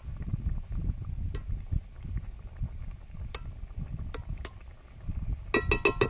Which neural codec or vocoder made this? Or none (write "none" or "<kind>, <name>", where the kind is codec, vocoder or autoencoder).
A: none